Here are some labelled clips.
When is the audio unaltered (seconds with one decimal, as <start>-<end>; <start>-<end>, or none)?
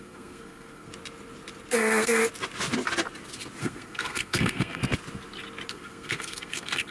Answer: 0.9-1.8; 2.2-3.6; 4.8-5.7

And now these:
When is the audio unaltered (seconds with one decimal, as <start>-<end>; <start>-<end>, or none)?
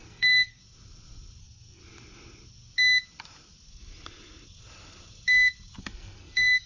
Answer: 0.6-1.4; 1.8-5.8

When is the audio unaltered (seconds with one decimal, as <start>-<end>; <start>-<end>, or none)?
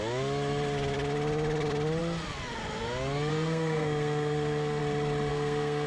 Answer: 0.0-3.3; 4.8-5.3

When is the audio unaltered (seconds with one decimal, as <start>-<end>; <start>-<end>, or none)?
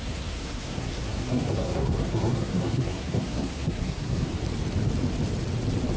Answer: 4.3-6.0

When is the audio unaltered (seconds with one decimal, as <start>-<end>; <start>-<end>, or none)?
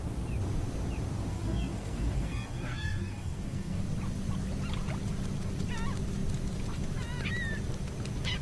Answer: 0.0-1.3; 3.8-8.4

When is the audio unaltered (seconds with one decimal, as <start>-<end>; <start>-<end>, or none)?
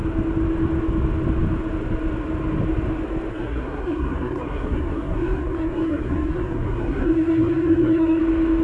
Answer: 0.0-3.3; 8.2-8.6